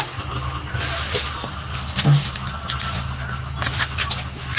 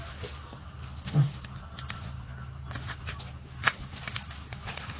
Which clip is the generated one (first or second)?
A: second